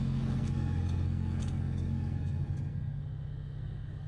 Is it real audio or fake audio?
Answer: fake